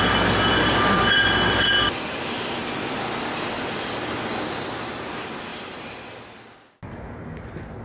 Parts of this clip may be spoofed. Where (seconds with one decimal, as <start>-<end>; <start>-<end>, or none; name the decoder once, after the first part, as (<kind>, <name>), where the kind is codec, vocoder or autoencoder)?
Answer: 5.5-6.0 (vocoder, BigVGAN v2)